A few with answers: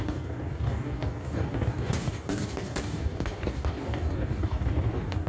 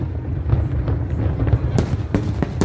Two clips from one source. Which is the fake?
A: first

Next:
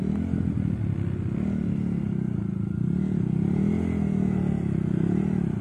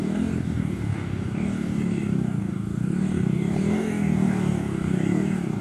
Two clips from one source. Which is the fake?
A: second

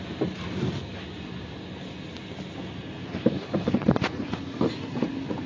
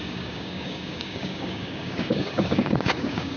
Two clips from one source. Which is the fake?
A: second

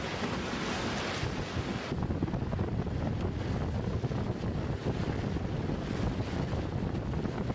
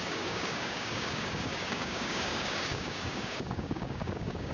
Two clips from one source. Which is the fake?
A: second